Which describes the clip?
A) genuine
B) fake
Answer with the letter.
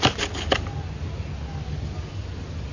A